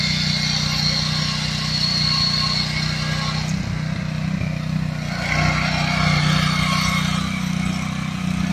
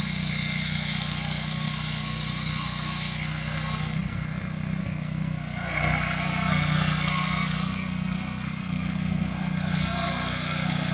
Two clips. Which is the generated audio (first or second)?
second